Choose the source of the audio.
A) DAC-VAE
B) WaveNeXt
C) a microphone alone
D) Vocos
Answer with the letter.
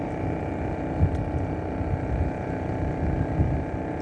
C